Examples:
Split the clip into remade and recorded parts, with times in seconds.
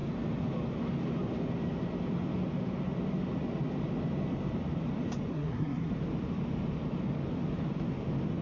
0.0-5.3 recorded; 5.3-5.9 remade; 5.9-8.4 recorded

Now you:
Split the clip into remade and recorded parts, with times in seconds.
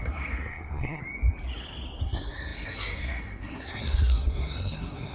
0.0-1.0 remade; 1.0-2.0 recorded; 2.0-5.1 remade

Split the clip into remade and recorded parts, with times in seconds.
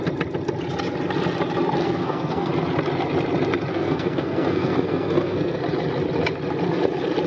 0.0-1.8 recorded; 1.8-2.5 remade; 2.5-3.7 recorded; 3.7-5.6 remade; 5.6-7.3 recorded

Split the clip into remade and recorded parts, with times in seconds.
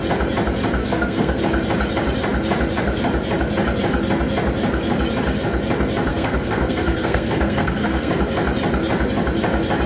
0.0-0.8 recorded; 0.8-1.4 remade; 1.4-6.1 recorded; 6.1-8.1 remade; 8.1-9.9 recorded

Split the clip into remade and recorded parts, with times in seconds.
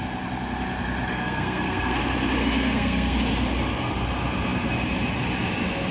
0.0-1.1 recorded; 1.1-2.0 remade; 2.0-2.4 recorded; 2.4-3.2 remade; 3.2-5.9 recorded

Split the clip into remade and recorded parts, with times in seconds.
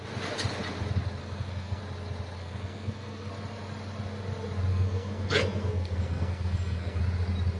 0.0-1.2 recorded; 1.2-1.8 remade; 1.8-2.4 recorded; 2.4-3.3 remade; 3.3-4.7 recorded; 4.7-7.0 remade; 7.0-7.6 recorded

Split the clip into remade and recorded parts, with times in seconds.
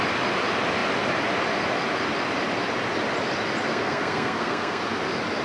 0.0-3.7 recorded; 3.7-4.8 remade; 4.8-5.4 recorded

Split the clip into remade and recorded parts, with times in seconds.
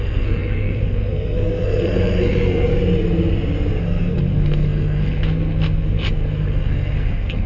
0.0-2.7 remade; 2.7-3.8 recorded; 3.8-7.5 remade